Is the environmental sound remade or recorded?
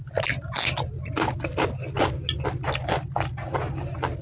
recorded